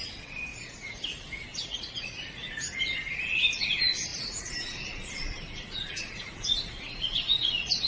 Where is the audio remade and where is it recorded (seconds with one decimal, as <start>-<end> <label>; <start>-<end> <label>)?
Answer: 0.0-0.5 recorded; 0.5-1.0 remade; 1.0-1.5 recorded; 1.5-2.5 remade; 2.5-4.1 recorded; 4.1-7.9 remade